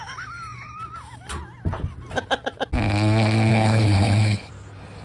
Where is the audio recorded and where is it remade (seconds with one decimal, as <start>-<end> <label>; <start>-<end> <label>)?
0.0-3.5 recorded; 3.5-4.5 remade; 4.5-5.0 recorded